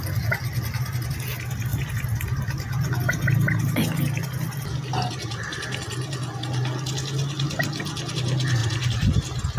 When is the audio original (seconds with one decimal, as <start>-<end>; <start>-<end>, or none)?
0.0-9.6